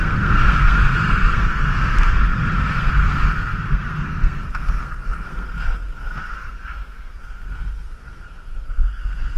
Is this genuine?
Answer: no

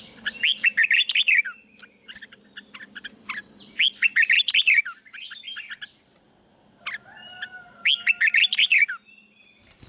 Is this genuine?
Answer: yes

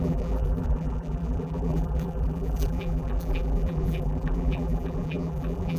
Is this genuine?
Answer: no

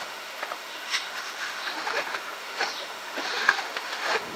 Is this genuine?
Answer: no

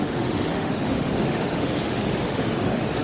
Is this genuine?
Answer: no